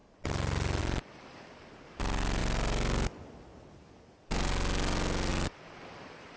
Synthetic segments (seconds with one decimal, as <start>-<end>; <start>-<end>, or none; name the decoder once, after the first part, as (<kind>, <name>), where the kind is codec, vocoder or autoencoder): 0.0-2.4 (vocoder, BigVGAN v2); 5.3-6.4